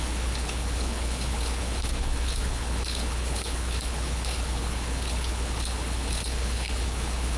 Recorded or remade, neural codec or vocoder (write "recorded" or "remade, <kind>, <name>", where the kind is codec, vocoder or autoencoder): remade, codec, HILCodec